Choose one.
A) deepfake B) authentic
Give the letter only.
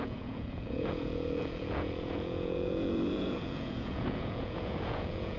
A